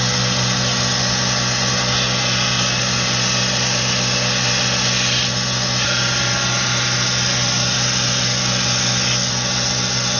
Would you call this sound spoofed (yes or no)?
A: no